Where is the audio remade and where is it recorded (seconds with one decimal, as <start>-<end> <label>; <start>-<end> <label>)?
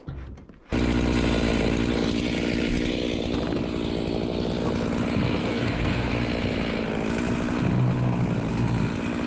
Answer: 0.0-5.4 recorded; 5.4-6.1 remade; 6.1-9.3 recorded